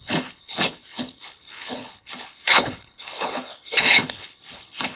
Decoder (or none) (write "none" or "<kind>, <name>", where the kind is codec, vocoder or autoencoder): codec, HILCodec